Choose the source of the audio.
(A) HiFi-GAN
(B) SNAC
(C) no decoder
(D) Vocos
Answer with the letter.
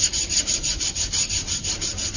C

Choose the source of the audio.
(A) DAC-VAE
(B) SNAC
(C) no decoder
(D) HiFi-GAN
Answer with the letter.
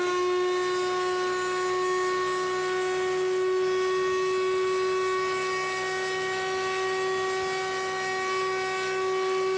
C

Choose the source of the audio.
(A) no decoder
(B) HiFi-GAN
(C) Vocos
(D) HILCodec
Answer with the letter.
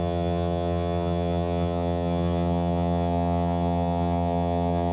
B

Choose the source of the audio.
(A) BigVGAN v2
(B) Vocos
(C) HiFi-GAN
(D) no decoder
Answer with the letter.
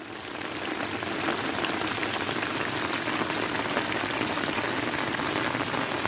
D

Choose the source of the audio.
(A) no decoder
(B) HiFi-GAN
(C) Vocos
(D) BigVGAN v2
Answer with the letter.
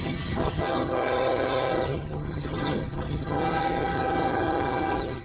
B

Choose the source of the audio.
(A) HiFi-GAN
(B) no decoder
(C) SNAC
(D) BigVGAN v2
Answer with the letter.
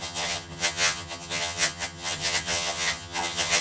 A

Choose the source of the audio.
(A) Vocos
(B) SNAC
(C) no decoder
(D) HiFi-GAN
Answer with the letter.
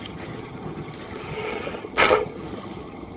D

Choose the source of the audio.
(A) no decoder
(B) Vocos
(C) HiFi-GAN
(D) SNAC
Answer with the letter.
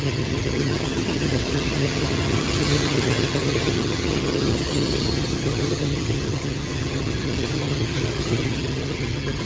C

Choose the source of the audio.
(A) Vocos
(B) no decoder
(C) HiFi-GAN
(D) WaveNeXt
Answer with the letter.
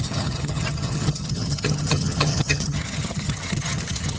C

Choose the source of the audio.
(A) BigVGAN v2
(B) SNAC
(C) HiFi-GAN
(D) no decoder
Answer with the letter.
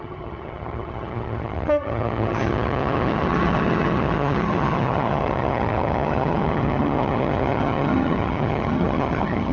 C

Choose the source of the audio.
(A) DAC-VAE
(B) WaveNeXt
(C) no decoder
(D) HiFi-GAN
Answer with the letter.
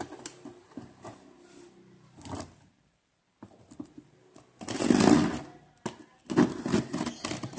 C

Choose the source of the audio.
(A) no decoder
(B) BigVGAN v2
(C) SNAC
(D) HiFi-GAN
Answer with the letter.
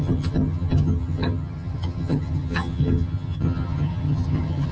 D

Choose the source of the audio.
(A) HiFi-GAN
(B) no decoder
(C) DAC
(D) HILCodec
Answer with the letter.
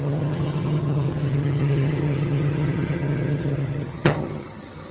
A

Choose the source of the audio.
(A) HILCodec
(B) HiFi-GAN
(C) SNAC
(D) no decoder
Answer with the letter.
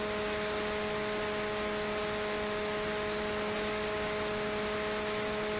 D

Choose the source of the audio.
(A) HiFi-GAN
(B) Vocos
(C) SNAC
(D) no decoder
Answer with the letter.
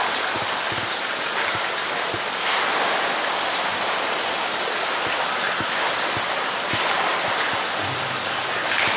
D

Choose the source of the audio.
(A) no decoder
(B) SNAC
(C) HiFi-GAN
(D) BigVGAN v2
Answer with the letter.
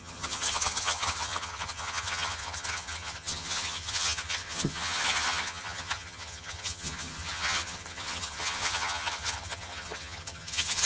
C